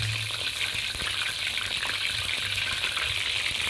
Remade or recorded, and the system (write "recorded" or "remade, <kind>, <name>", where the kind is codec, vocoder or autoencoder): recorded